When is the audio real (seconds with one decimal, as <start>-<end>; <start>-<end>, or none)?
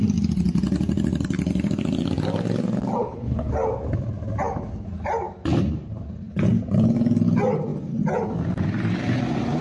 0.0-3.0; 3.5-9.6